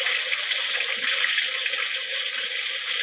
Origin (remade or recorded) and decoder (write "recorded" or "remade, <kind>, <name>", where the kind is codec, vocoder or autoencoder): recorded